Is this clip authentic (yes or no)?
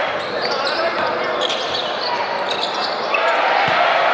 yes